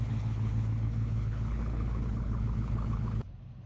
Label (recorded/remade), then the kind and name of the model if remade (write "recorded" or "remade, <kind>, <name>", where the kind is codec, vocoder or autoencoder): remade, codec, HILCodec